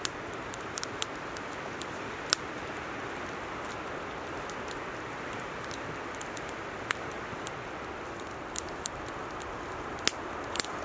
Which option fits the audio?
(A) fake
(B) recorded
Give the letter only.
B